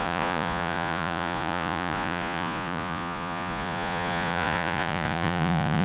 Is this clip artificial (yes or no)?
yes